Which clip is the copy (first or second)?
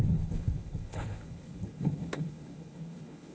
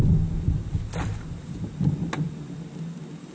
first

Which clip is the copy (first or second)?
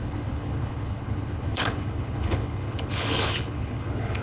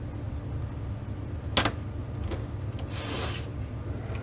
first